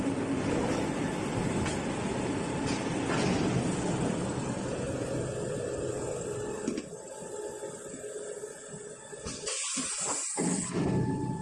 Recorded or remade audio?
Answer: recorded